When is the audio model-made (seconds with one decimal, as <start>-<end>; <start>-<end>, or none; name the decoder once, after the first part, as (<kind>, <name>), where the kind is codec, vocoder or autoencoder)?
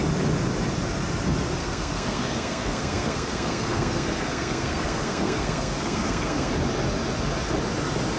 1.6-6.5 (codec, SNAC)